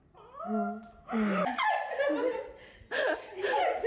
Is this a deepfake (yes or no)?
no